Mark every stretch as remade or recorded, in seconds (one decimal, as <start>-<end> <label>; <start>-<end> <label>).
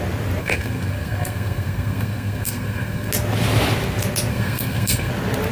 0.0-0.4 recorded; 0.4-3.1 remade; 3.1-4.3 recorded; 4.3-5.1 remade; 5.1-5.5 recorded